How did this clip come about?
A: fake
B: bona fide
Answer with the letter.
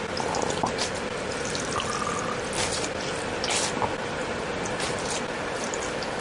B